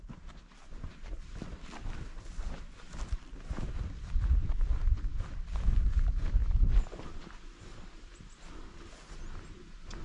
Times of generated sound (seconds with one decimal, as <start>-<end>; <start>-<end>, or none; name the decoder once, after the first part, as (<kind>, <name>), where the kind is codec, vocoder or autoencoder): none